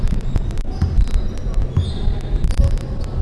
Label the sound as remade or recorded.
recorded